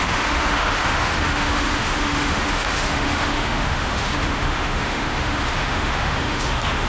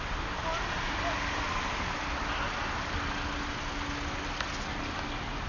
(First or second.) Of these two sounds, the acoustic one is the second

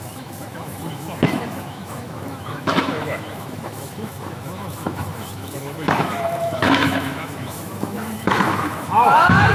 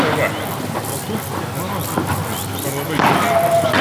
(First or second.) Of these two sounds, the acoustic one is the second